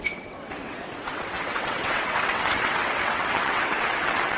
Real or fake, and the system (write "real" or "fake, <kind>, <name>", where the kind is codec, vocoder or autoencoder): fake, vocoder, WaveNeXt